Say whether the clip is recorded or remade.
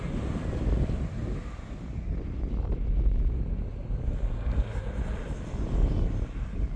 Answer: recorded